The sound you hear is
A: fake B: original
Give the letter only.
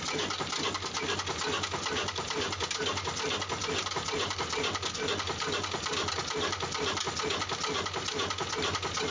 B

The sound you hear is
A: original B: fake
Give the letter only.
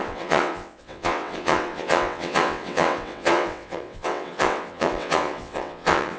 B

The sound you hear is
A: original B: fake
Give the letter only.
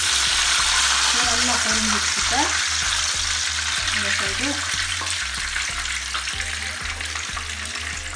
A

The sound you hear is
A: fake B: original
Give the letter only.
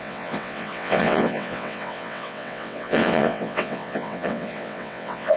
A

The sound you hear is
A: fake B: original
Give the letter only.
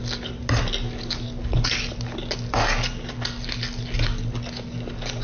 B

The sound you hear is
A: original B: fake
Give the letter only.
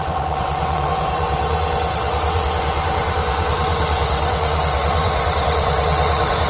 B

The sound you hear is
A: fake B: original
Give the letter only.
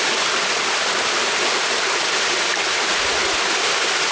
B